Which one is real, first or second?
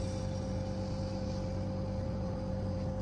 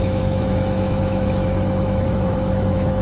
first